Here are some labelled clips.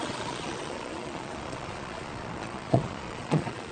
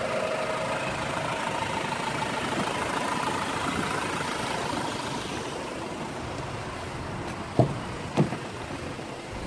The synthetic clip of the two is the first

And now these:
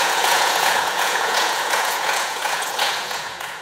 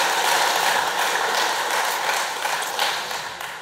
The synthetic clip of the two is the first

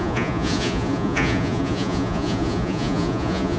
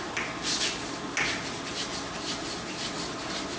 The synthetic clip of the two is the first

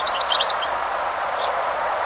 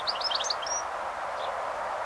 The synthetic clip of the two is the first